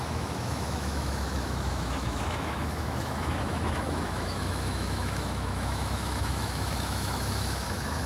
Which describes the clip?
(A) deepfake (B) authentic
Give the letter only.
A